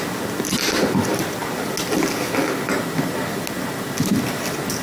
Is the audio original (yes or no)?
yes